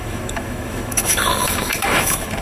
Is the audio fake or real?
fake